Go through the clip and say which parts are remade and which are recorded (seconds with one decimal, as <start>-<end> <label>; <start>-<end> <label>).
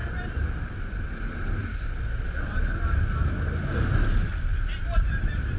0.0-5.6 recorded